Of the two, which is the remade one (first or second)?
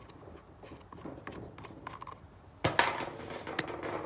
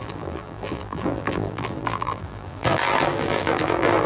second